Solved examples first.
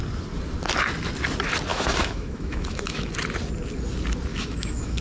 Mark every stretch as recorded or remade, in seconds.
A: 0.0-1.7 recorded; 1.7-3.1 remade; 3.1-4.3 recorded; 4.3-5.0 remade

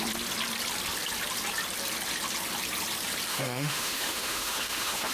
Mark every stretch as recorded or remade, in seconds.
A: 0.0-3.3 recorded; 3.3-5.1 remade

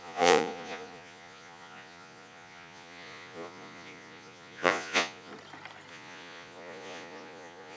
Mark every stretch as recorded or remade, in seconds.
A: 0.0-5.3 remade; 5.3-5.9 recorded; 5.9-7.8 remade

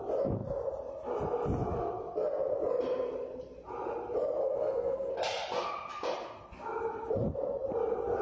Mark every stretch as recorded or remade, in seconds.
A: 0.0-4.4 recorded; 4.4-5.1 remade; 5.1-8.2 recorded

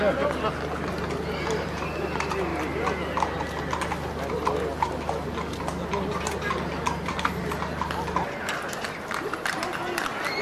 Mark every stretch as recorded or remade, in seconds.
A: 0.0-10.4 recorded

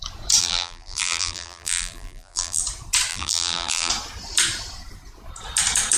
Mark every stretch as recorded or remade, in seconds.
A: 0.0-0.4 recorded; 0.4-2.6 remade; 2.6-3.1 recorded; 3.1-3.9 remade; 3.9-6.0 recorded

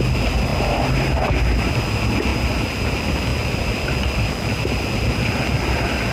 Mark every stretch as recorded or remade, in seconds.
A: 0.0-0.5 recorded; 0.5-1.8 remade; 1.8-2.3 recorded; 2.3-2.9 remade; 2.9-3.3 recorded; 3.3-4.3 remade; 4.3-6.1 recorded